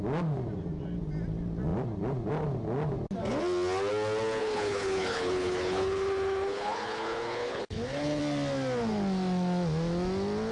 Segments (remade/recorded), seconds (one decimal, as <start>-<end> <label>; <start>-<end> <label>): 0.0-4.4 recorded; 4.4-8.2 remade; 8.2-10.5 recorded

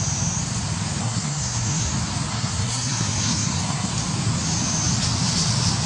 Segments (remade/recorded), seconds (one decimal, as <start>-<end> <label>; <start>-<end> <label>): 0.0-1.0 recorded; 1.0-1.9 remade; 1.9-2.3 recorded; 2.3-3.9 remade; 3.9-5.9 recorded